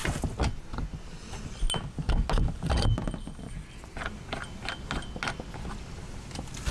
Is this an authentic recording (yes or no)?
yes